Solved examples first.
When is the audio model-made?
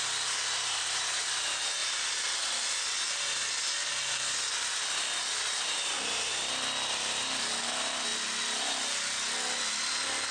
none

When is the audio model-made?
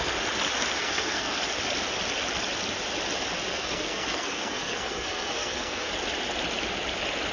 0.8-1.4 (codec, SNAC); 3.5-5.9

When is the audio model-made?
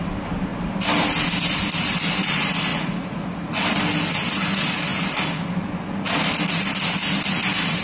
2.7-3.5 (vocoder, Vocos)